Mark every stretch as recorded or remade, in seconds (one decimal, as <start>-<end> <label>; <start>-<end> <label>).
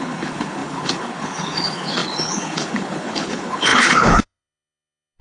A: 0.0-5.2 remade